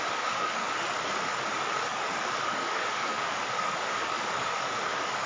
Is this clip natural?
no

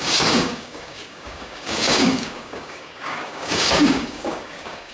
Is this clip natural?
no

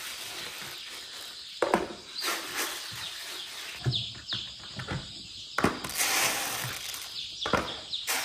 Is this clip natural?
yes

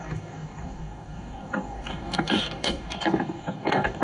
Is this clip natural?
no